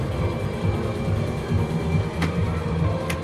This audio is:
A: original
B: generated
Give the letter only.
A